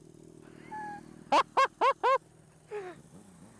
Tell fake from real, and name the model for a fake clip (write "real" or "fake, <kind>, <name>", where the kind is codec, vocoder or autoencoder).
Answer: real